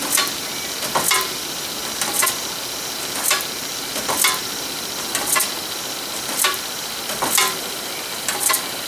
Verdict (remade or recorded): recorded